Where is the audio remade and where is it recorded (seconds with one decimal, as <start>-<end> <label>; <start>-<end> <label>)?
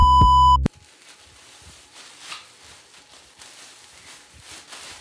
0.0-5.0 recorded